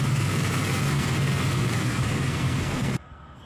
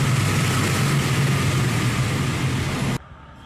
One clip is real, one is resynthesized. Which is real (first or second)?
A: second